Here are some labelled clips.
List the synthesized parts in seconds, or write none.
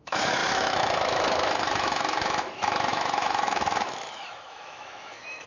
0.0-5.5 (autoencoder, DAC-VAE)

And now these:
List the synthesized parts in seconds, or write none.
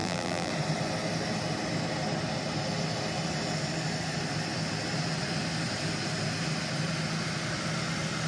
0.0-0.5 (vocoder, BigVGAN v2)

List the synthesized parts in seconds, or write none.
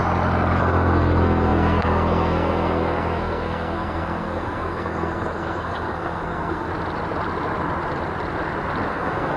0.6-6.7 (codec, SNAC); 8.9-9.4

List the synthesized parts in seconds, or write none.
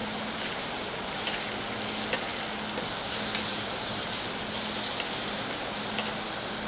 0.0-1.3 (vocoder, BigVGAN v2); 3.5-4.2; 4.9-5.9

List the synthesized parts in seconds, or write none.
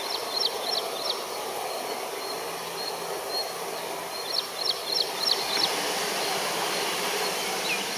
none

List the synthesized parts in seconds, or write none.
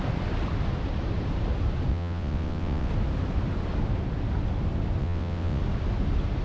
1.9-2.9 (vocoder, WaveNeXt); 5.0-5.6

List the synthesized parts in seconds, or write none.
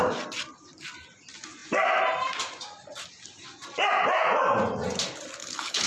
5.4-5.9 (codec, HILCodec)